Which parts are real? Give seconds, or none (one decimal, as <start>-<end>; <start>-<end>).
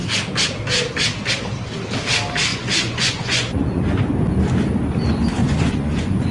0.0-2.5; 4.0-5.4